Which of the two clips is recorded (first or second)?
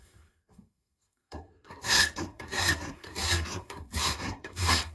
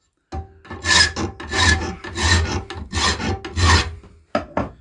second